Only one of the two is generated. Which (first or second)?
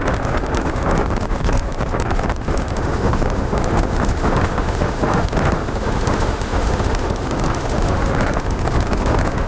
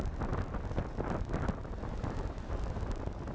first